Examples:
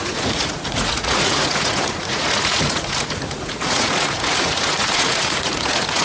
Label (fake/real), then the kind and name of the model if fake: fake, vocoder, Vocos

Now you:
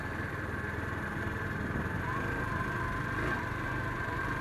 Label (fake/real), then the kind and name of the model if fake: real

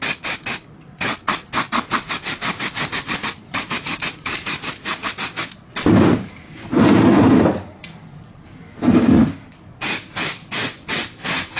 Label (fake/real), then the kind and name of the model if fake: real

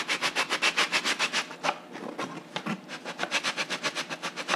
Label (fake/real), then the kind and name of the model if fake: real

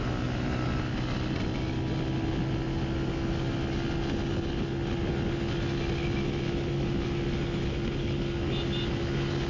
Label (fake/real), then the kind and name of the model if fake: real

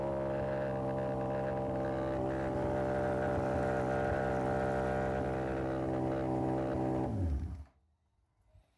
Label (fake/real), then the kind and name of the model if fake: real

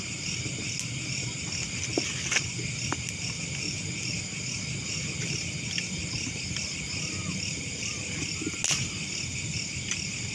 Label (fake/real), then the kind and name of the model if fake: real